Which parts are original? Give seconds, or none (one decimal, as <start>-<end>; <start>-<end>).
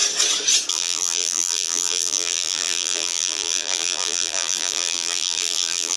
0.0-0.7